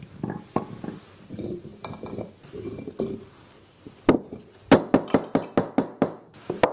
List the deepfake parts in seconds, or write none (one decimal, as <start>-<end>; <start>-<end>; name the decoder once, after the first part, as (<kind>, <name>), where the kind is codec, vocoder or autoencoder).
none